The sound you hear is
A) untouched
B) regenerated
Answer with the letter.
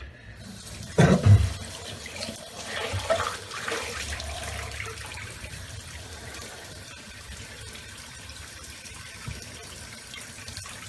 B